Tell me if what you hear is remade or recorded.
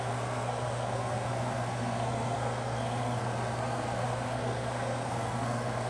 remade